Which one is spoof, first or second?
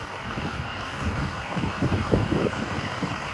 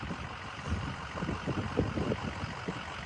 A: first